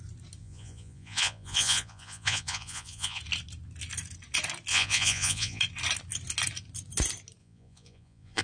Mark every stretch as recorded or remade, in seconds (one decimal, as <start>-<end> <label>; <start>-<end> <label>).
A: 0.0-0.4 recorded; 0.4-3.2 remade; 3.2-4.7 recorded; 4.7-5.6 remade; 5.6-7.4 recorded; 7.4-8.4 remade